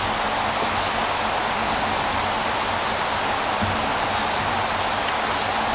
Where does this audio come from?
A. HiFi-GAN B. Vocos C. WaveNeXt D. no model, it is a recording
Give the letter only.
D